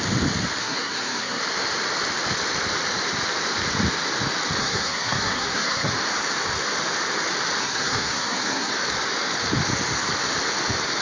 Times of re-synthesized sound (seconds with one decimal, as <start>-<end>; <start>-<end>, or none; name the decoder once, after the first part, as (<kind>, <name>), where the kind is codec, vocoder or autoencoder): 0.6-1.4 (codec, SNAC); 4.6-5.9; 7.6-8.7